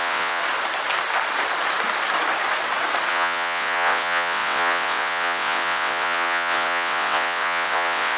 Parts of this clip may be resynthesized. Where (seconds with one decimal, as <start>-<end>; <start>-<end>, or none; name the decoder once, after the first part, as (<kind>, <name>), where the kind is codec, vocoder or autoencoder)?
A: 0.0-0.4 (vocoder, WaveNeXt); 3.1-8.2